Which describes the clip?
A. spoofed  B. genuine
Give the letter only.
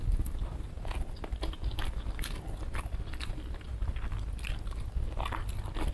B